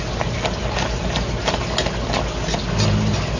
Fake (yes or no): no